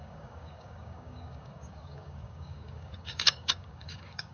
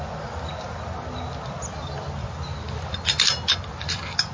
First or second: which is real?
second